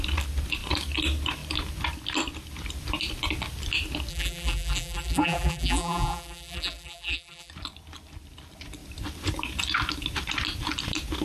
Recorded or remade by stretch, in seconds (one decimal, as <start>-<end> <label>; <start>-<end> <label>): 0.0-4.1 recorded; 4.1-7.5 remade; 7.5-11.2 recorded